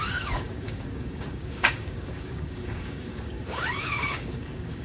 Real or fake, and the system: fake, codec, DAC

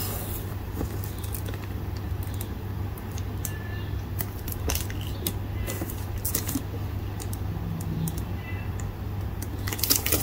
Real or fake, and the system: real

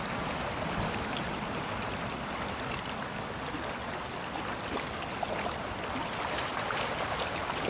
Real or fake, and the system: real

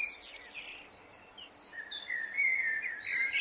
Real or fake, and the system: real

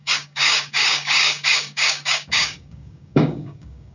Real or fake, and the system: fake, codec, DAC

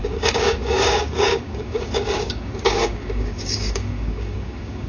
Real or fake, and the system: fake, codec, DAC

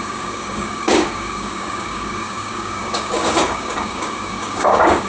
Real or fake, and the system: fake, codec, DAC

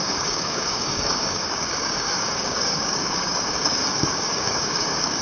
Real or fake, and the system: fake, codec, DAC